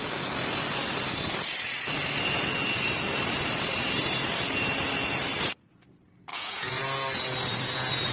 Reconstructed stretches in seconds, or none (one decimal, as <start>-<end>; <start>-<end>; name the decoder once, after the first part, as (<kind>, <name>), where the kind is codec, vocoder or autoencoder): 6.3-6.8 (vocoder, Vocos)